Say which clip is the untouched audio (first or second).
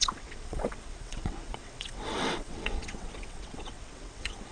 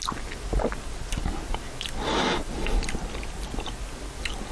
second